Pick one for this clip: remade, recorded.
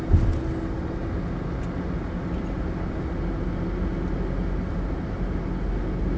recorded